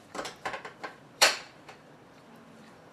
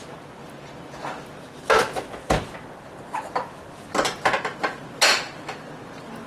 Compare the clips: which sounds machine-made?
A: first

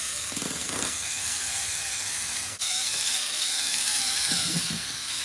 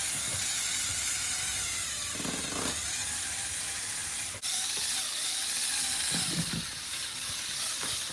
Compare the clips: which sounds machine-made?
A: first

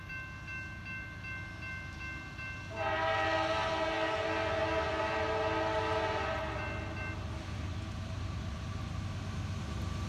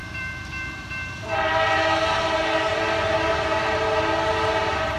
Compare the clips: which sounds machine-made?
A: second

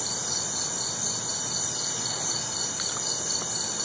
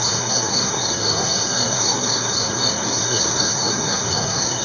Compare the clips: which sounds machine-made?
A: second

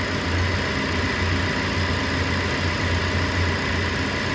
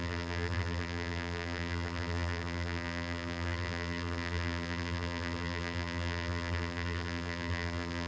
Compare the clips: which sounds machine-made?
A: second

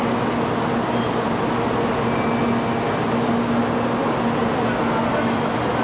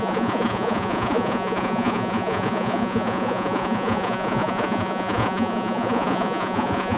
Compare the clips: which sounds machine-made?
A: second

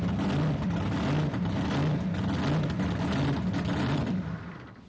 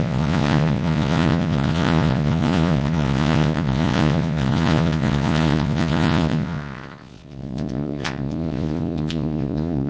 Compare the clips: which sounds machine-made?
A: second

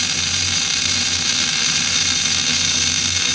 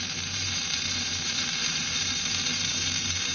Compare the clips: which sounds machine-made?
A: second